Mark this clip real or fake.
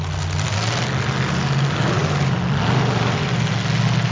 real